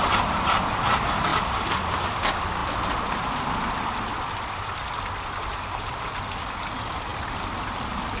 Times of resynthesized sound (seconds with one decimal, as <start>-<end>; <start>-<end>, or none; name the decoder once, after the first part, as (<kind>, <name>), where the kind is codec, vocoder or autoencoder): 1.3-2.0 (vocoder, BigVGAN v2); 2.6-6.1; 7.1-8.2